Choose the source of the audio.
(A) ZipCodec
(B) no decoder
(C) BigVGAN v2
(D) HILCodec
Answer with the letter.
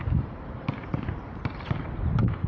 C